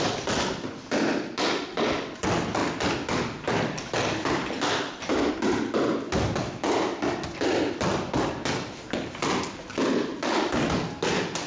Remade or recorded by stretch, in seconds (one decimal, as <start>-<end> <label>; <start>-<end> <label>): 0.0-11.5 recorded